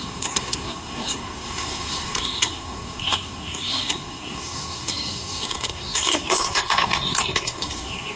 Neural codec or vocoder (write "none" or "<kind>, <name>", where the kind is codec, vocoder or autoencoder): codec, SNAC